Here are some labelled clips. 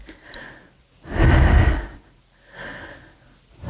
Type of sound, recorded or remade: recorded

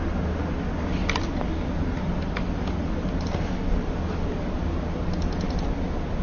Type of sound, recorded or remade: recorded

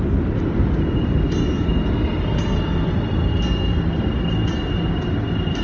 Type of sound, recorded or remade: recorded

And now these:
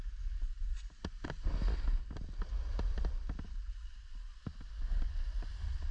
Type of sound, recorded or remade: recorded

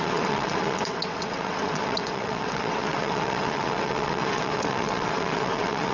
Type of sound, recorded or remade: remade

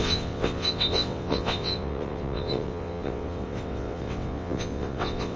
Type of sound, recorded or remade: remade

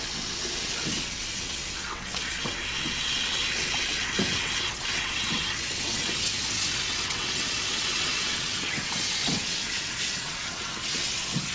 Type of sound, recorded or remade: remade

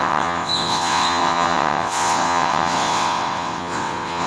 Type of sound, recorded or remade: remade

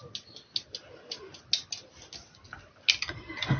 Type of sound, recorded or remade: recorded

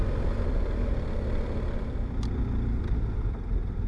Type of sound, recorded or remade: recorded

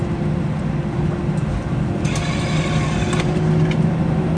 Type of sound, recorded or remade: recorded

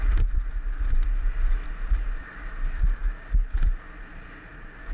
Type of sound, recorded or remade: recorded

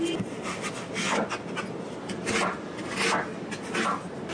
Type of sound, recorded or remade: recorded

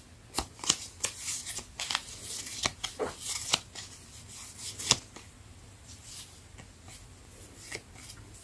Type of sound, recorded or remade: recorded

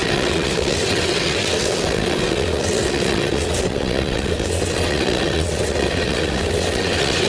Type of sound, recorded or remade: remade